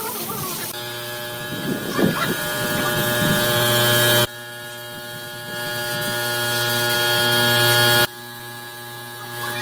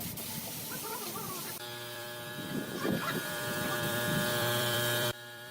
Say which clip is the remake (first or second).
second